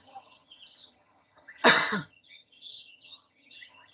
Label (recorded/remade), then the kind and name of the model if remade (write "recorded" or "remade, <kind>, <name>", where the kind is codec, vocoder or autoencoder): remade, vocoder, HiFi-GAN